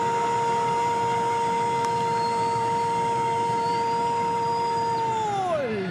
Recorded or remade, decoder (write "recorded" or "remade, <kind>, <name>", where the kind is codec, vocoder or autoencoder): recorded